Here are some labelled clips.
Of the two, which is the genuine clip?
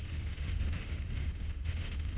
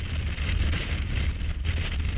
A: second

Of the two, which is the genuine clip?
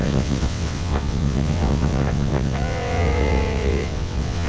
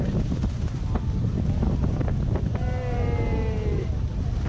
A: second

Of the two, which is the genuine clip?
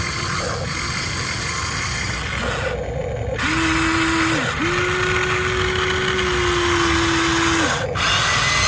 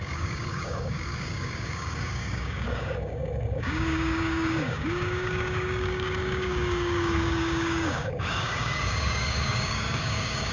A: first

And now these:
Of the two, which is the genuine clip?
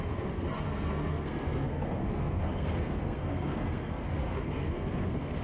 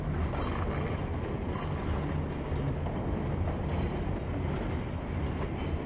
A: second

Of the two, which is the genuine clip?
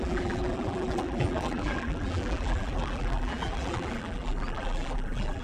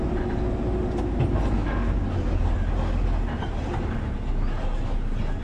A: second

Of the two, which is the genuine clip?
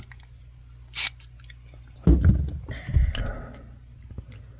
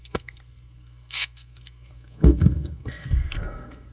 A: first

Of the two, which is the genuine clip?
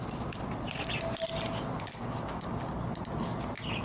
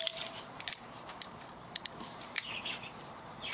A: first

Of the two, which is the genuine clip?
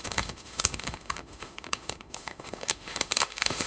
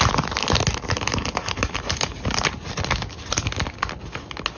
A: second